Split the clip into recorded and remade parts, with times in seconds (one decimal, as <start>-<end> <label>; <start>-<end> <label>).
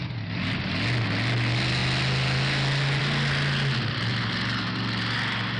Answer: 0.0-5.6 recorded